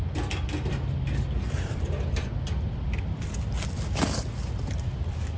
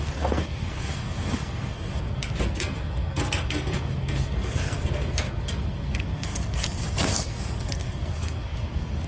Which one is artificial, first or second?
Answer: second